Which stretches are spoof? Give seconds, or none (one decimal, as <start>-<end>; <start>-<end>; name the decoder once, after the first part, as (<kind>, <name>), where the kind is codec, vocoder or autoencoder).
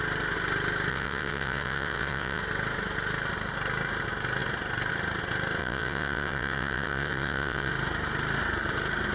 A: 0.9-2.4 (vocoder, WaveNeXt); 5.6-7.7